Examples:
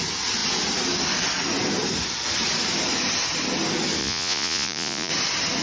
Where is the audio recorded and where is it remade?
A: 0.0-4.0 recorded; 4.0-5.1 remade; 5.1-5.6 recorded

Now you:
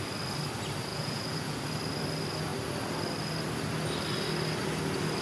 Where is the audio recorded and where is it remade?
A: 0.0-0.9 recorded; 0.9-1.6 remade; 1.6-5.2 recorded